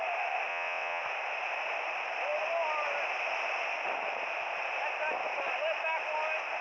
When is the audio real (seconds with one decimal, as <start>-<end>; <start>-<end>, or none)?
0.0-0.5; 1.0-6.6